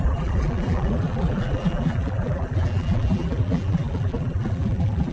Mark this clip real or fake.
fake